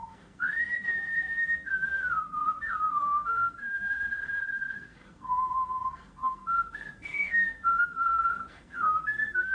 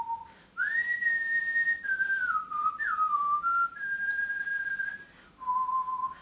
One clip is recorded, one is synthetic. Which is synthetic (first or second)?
first